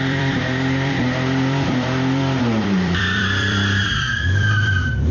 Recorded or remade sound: remade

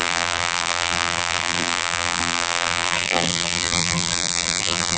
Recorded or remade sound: remade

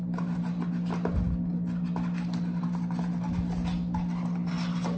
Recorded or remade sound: recorded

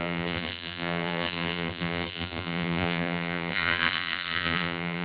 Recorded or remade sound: remade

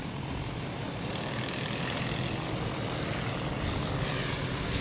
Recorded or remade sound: recorded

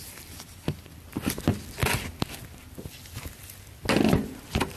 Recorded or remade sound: recorded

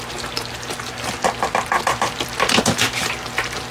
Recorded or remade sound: recorded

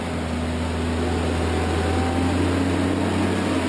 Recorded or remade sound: recorded